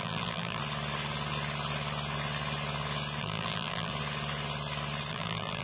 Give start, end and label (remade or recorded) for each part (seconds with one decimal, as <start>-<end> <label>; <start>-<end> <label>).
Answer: 0.0-0.6 remade; 0.6-3.2 recorded; 3.2-3.9 remade; 3.9-5.1 recorded; 5.1-5.6 remade